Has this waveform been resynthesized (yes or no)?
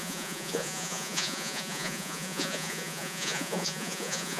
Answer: yes